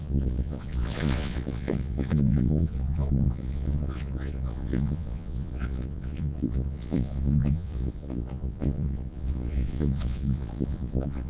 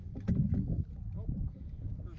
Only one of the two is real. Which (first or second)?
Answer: second